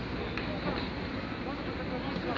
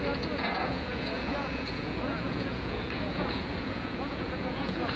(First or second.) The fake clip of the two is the second